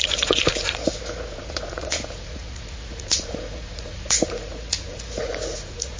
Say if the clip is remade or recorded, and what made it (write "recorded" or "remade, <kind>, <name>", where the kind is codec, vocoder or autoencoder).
remade, vocoder, Vocos